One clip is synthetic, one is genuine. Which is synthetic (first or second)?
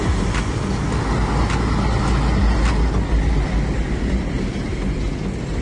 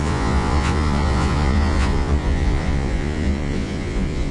second